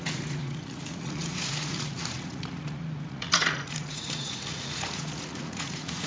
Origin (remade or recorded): remade